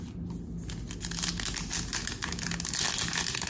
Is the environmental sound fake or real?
real